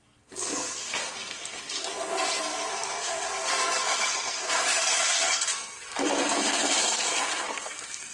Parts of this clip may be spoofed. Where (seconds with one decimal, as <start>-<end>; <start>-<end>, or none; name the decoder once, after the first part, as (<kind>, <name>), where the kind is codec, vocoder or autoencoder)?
0.0-8.1 (codec, SNAC)